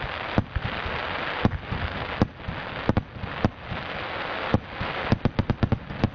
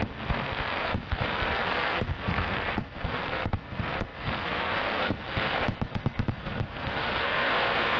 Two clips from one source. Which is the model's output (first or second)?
second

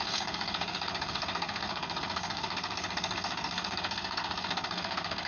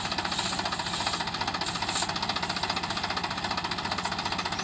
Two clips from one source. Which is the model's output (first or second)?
first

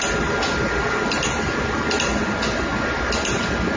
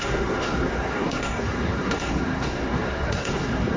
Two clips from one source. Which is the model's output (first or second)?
second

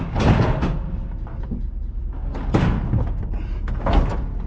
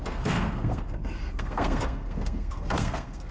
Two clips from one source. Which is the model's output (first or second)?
second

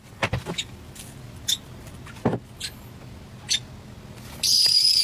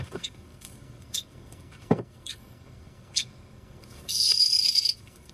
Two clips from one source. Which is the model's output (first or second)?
second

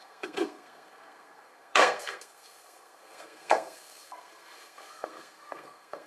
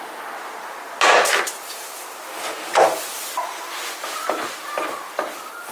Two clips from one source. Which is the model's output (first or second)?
first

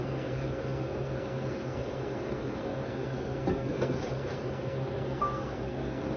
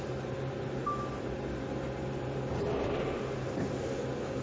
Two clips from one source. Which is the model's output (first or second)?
first